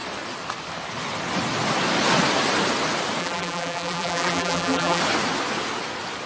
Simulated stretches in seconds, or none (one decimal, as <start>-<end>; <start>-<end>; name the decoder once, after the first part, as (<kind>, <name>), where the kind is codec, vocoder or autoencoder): 3.2-5.0 (vocoder, BigVGAN v2)

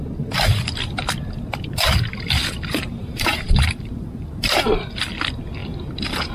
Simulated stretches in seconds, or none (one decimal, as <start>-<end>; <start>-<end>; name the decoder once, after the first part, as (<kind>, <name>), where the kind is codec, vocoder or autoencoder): 2.4-4.3 (vocoder, BigVGAN v2)

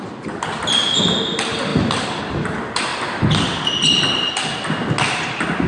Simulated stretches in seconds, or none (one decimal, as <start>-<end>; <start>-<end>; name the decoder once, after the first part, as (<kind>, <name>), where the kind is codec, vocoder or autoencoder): 1.7-2.2 (vocoder, BigVGAN v2)

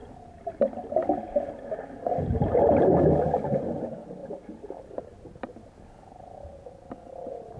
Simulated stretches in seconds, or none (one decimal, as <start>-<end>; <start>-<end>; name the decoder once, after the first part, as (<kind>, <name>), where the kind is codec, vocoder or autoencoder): 0.0-2.8 (vocoder, BigVGAN v2)